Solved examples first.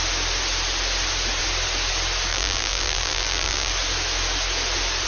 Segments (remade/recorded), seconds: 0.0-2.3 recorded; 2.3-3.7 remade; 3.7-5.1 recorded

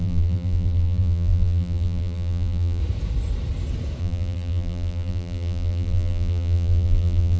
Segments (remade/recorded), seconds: 0.0-2.8 remade; 2.8-4.0 recorded; 4.0-7.4 remade

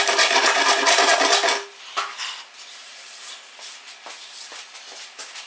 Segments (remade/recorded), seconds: 0.0-1.1 remade; 1.1-2.9 recorded; 2.9-5.5 remade

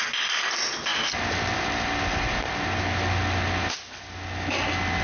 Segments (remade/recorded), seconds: 0.0-5.0 recorded

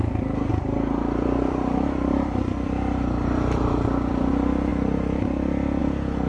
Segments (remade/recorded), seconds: 0.0-0.5 recorded; 0.5-4.3 remade; 4.3-6.3 recorded

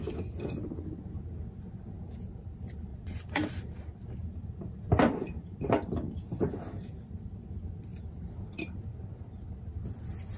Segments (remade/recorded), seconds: 0.0-2.9 recorded; 2.9-3.5 remade; 3.5-4.2 recorded; 4.2-5.6 remade; 5.6-10.4 recorded

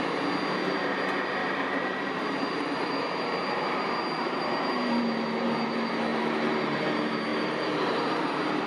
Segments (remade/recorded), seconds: 0.0-1.4 recorded; 1.4-5.0 remade; 5.0-6.1 recorded; 6.1-6.8 remade; 6.8-7.3 recorded; 7.3-8.1 remade; 8.1-8.7 recorded